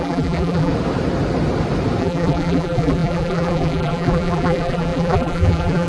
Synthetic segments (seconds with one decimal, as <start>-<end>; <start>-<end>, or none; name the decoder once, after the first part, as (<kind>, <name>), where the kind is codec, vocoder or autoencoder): 0.0-0.7 (vocoder, BigVGAN v2); 2.0-5.9